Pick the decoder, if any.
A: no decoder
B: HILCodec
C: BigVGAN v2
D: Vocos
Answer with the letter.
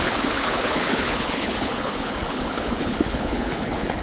B